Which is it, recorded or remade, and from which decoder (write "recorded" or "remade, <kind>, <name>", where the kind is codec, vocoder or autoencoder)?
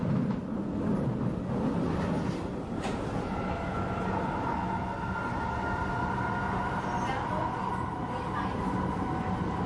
recorded